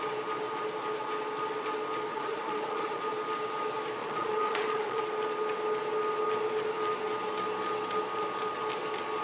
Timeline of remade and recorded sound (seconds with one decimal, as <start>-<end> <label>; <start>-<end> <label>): 0.0-2.1 recorded; 2.1-3.0 remade; 3.0-4.0 recorded; 4.0-5.0 remade; 5.0-9.2 recorded